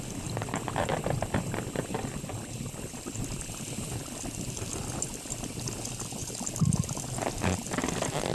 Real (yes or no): yes